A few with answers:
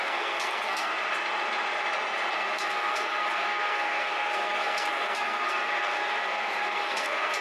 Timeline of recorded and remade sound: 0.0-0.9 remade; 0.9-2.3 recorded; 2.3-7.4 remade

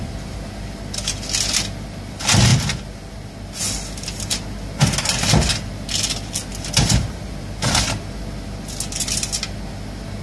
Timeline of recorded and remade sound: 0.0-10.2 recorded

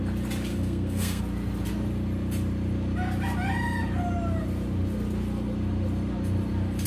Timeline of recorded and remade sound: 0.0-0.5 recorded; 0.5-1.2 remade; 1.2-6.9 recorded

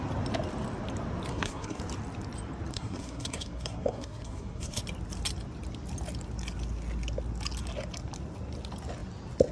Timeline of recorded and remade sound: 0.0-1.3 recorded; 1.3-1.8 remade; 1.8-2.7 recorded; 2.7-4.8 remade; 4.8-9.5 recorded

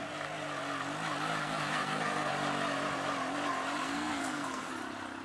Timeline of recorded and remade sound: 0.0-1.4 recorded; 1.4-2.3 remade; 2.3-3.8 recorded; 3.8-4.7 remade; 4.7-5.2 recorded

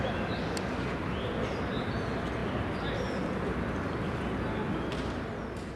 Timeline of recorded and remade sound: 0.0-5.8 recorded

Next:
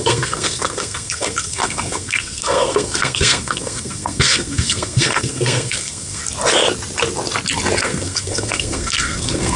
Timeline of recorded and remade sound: 0.0-6.2 remade; 6.2-7.8 recorded; 7.8-9.6 remade

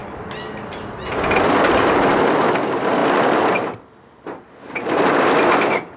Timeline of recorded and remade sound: 0.0-6.0 recorded